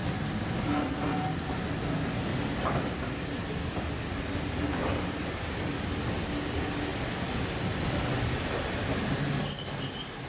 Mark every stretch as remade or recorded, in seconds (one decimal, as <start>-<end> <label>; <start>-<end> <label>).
0.0-10.3 recorded